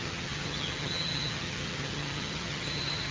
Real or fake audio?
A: fake